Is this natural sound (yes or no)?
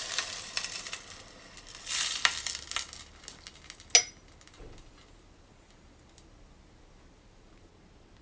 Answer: yes